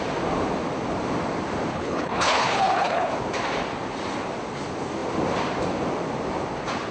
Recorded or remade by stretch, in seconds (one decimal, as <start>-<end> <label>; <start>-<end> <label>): 0.0-1.7 recorded; 1.7-3.1 remade; 3.1-6.9 recorded